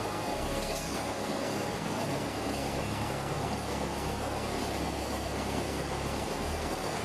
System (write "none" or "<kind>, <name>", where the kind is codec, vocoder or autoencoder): codec, SNAC